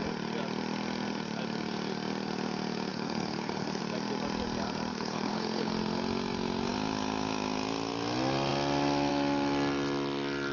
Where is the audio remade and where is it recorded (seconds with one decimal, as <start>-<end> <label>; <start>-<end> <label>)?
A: 0.0-2.9 recorded; 2.9-3.8 remade; 3.8-4.9 recorded; 4.9-5.7 remade; 5.7-10.5 recorded